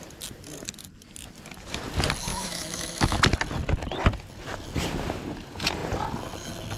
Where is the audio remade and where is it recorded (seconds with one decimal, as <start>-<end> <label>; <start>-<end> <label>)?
0.0-2.3 recorded; 2.3-3.2 remade; 3.2-6.8 recorded